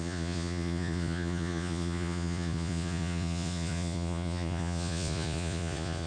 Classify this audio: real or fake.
fake